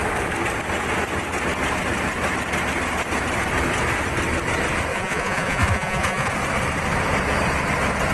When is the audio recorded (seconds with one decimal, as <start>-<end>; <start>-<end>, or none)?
0.0-4.9; 6.3-8.1